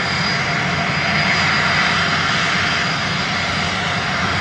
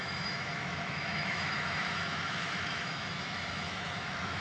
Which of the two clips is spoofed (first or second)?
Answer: second